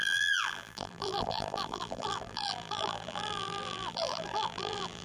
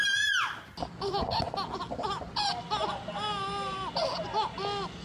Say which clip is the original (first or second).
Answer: second